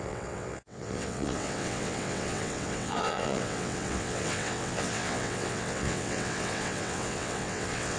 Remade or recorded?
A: remade